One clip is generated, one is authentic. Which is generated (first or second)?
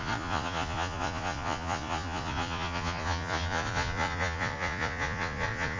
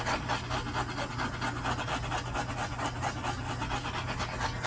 first